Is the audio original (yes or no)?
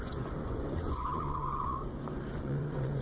no